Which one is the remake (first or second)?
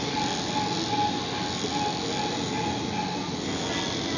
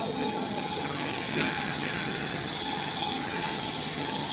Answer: second